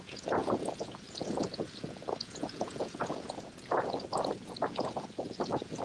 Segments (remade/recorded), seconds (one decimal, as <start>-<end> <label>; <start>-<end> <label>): 0.0-5.8 remade